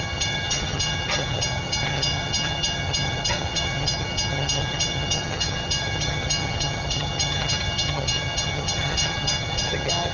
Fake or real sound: fake